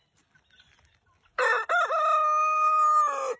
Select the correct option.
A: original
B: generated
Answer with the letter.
A